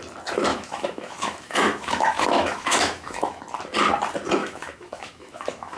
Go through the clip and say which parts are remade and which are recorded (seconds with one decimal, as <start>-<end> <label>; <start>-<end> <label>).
0.0-0.5 recorded; 0.5-3.4 remade; 3.4-4.4 recorded; 4.4-5.8 remade